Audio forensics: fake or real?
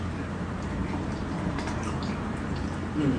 fake